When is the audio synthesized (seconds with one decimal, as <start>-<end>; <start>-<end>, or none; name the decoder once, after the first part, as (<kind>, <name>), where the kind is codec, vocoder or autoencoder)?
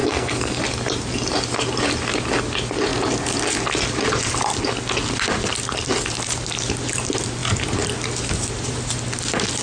0.0-0.6 (codec, SNAC)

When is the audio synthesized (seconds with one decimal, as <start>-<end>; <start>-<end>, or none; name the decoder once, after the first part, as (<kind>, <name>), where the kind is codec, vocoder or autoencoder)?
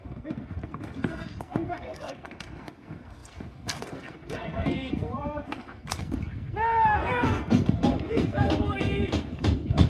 0.0-9.9 (codec, SNAC)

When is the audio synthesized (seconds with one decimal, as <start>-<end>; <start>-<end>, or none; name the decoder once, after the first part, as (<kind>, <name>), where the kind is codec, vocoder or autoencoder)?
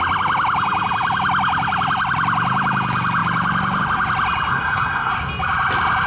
4.5-5.1 (codec, SNAC)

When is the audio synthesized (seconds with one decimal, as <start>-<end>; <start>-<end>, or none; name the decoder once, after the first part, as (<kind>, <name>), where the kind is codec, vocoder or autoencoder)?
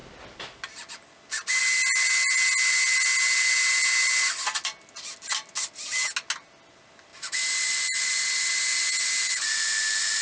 none